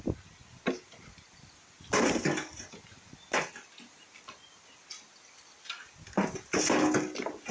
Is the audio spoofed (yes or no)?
no